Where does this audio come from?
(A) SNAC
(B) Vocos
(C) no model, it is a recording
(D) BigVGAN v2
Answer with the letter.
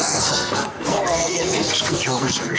A